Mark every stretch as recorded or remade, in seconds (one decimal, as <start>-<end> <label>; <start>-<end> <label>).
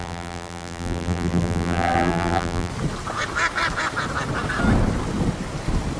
0.0-2.7 remade; 2.7-6.0 recorded